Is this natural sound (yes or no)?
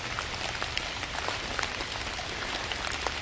yes